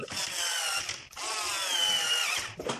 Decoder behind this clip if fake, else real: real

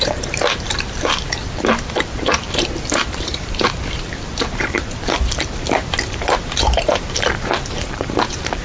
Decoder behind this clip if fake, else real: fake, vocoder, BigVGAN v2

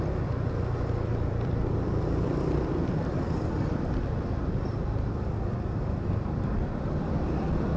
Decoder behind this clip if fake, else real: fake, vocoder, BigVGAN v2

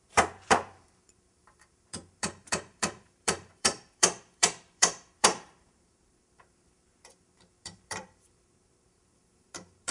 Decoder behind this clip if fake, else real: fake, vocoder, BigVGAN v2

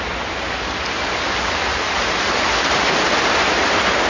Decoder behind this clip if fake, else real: fake, vocoder, BigVGAN v2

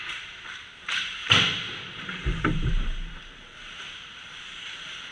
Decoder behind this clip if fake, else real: fake, vocoder, BigVGAN v2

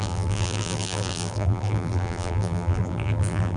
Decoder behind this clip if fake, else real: fake, vocoder, BigVGAN v2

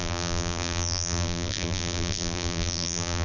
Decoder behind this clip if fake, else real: fake, vocoder, BigVGAN v2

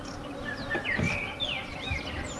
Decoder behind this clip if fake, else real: real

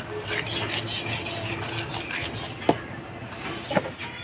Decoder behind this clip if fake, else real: real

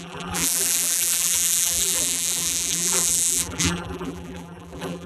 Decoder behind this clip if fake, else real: fake, vocoder, BigVGAN v2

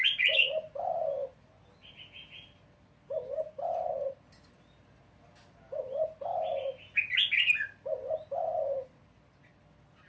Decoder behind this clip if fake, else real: real